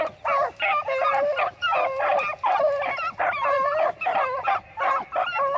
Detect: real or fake real